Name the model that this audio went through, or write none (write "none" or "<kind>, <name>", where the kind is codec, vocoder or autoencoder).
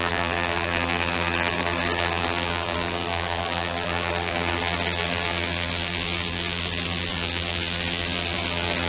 vocoder, BigVGAN v2